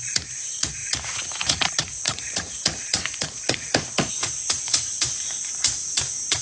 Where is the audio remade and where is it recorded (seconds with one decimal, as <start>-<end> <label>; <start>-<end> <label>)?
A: 0.0-6.4 remade

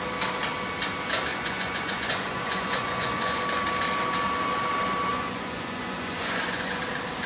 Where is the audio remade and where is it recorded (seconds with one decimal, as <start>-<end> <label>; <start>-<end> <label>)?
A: 0.0-1.3 recorded; 1.3-3.4 remade; 3.4-5.1 recorded; 5.1-6.8 remade; 6.8-7.3 recorded

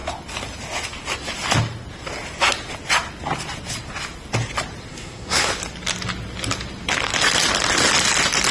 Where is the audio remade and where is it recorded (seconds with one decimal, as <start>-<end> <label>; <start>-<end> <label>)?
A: 0.0-4.9 recorded; 4.9-5.5 remade; 5.5-8.5 recorded

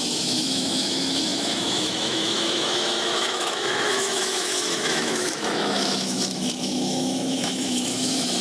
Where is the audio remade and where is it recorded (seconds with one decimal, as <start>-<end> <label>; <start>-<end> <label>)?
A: 0.0-8.4 remade

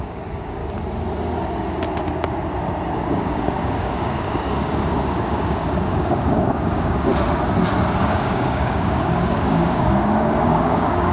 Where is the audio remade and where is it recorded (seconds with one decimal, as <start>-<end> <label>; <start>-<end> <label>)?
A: 0.0-0.6 remade; 0.6-3.1 recorded; 3.1-7.1 remade; 7.1-8.0 recorded; 8.0-11.1 remade

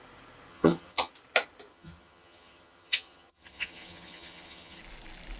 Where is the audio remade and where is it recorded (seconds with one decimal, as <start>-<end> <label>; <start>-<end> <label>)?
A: 0.0-0.5 recorded; 0.5-1.1 remade; 1.1-1.7 recorded; 1.7-4.8 remade; 4.8-5.4 recorded

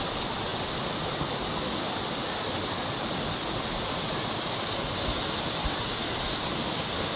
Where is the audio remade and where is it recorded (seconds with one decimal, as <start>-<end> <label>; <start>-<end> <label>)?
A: 0.0-7.2 recorded